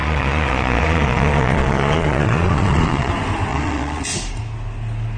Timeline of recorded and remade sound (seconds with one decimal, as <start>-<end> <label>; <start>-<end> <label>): 0.0-3.1 remade; 3.1-3.5 recorded; 3.5-4.1 remade; 4.1-5.2 recorded